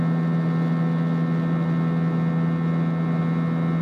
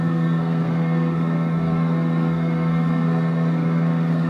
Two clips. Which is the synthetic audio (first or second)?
second